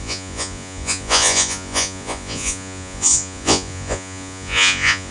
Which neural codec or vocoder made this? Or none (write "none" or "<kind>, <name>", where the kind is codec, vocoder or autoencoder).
vocoder, Vocos